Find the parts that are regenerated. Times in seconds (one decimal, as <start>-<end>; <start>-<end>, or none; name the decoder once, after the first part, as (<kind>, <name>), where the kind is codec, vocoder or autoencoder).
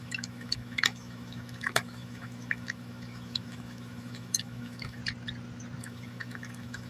0.0-5.0 (autoencoder, DAC-VAE); 5.8-6.9